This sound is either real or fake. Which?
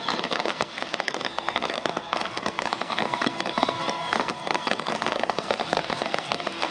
fake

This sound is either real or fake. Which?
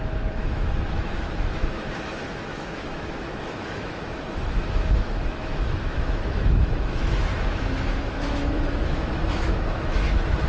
fake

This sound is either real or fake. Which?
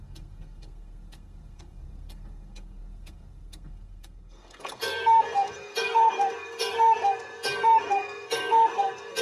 fake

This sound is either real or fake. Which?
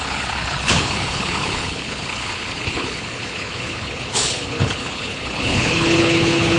fake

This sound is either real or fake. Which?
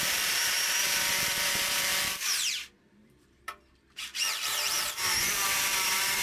fake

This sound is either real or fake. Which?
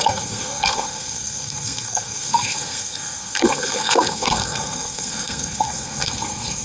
fake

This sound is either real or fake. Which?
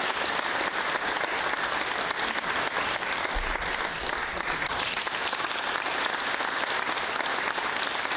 real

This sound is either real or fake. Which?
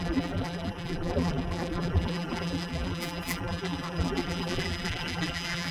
fake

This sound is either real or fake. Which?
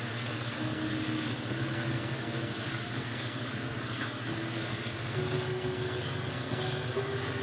fake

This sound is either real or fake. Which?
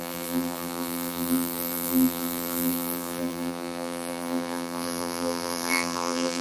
fake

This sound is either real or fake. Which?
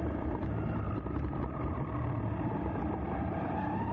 real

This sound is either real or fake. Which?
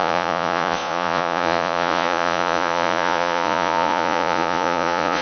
fake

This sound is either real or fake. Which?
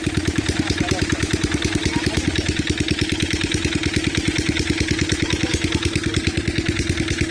real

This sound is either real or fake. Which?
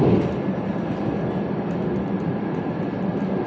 real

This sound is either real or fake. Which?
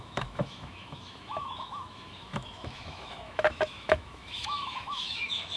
fake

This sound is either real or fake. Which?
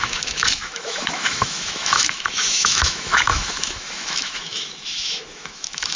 fake